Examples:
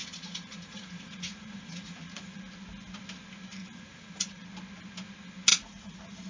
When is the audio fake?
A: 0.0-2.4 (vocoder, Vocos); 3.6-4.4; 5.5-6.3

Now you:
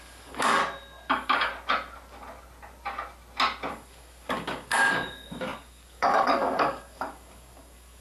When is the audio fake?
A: 0.0-0.6 (codec, DAC); 1.1-1.5; 3.7-8.0